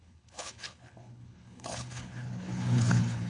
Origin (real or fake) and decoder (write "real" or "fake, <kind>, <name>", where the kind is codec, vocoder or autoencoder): fake, codec, HILCodec